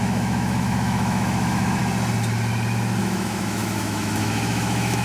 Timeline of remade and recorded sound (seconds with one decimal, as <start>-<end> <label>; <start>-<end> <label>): 0.0-1.8 remade; 1.8-3.0 recorded; 3.0-5.0 remade